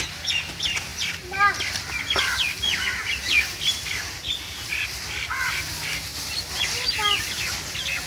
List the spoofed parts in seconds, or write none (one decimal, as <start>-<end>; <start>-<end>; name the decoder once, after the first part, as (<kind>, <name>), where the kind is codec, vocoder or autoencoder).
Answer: none